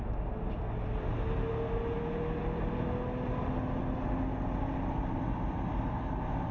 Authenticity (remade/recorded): recorded